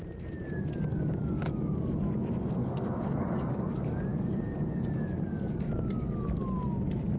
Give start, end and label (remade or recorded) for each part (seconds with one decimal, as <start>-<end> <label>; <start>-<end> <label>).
0.0-0.9 recorded; 0.9-1.9 remade; 1.9-2.6 recorded; 2.6-6.4 remade; 6.4-7.2 recorded